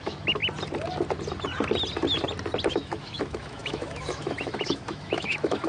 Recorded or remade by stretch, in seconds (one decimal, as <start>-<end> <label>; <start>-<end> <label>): 0.0-0.4 remade; 0.4-2.7 recorded; 2.7-5.7 remade